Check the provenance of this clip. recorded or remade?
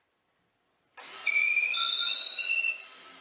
recorded